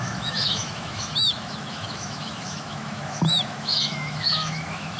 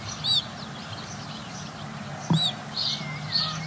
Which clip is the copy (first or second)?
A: first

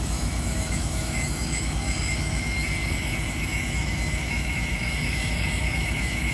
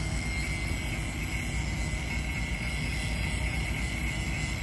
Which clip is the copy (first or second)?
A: first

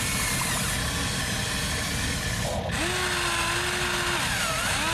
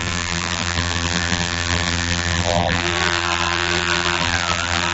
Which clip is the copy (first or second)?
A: second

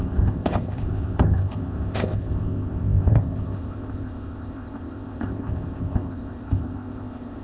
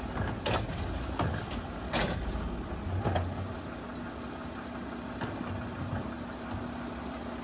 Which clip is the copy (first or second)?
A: first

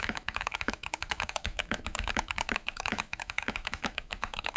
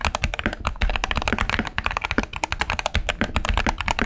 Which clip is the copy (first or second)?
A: first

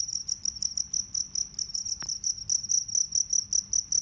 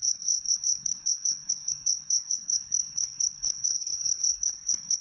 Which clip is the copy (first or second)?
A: second